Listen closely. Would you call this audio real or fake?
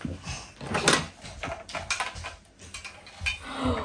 real